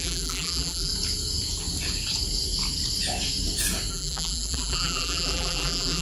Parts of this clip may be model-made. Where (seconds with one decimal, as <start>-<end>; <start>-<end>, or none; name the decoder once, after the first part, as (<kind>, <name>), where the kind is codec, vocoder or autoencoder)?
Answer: 0.0-0.9 (vocoder, BigVGAN v2); 3.9-6.0